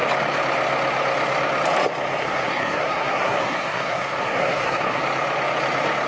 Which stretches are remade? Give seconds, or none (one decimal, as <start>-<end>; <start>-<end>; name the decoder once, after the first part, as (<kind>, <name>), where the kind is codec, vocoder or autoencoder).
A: 2.2-5.0 (codec, SNAC)